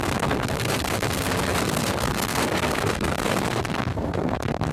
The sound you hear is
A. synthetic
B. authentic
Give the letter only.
A